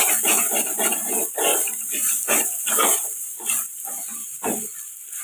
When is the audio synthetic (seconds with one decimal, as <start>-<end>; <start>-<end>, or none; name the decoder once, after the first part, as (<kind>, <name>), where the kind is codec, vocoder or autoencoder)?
1.5-2.3 (vocoder, BigVGAN v2); 2.8-4.7